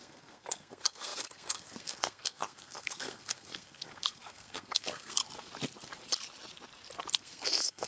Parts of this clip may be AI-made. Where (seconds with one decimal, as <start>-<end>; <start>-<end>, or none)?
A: 0.0-5.2; 7.2-7.9